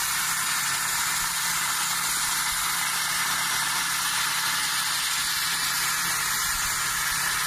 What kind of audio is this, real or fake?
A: real